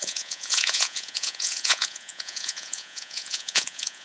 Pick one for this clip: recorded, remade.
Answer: remade